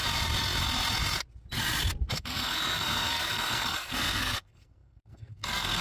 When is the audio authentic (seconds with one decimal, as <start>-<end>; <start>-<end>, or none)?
0.0-2.1